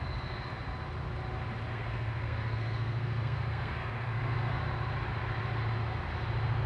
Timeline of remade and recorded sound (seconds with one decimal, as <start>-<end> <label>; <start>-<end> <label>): 0.0-1.7 recorded; 1.7-4.6 remade; 4.6-6.7 recorded

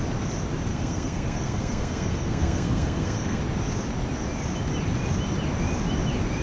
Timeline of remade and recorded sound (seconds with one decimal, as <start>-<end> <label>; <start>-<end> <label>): 0.0-0.7 recorded; 0.7-3.4 remade; 3.4-6.4 recorded

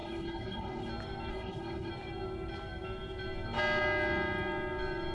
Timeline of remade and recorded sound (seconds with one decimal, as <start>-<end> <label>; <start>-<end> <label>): 0.0-0.9 remade; 0.9-1.3 recorded; 1.3-1.9 remade; 1.9-5.1 recorded

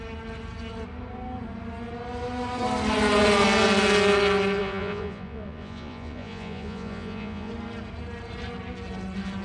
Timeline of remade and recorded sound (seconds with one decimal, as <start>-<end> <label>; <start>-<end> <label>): 0.0-4.6 recorded; 4.6-7.5 remade; 7.5-9.4 recorded

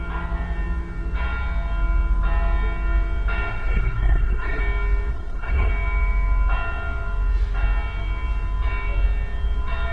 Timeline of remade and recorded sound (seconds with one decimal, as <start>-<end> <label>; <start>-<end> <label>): 0.0-3.5 recorded; 3.5-4.6 remade; 4.6-5.1 recorded; 5.1-5.7 remade; 5.7-9.9 recorded

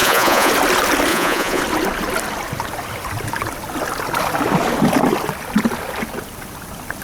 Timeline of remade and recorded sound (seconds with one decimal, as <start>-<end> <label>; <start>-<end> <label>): 0.0-0.5 remade; 0.5-1.1 recorded; 1.1-1.6 remade; 1.6-7.0 recorded